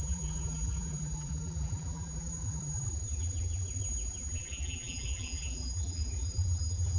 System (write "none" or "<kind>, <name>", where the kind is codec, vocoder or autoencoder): vocoder, BigVGAN v2